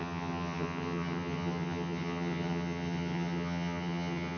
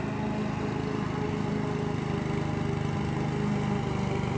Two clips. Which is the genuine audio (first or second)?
second